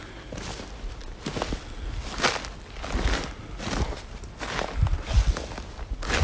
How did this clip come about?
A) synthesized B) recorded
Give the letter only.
B